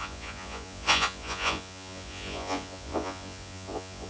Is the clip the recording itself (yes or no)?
no